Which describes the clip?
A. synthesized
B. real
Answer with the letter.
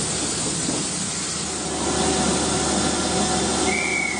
B